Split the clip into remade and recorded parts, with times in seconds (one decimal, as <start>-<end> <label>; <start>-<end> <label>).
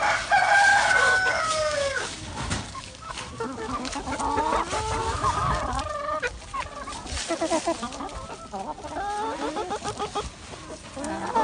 0.0-0.7 recorded; 0.7-4.0 remade; 4.0-5.0 recorded; 5.0-5.6 remade; 5.6-11.4 recorded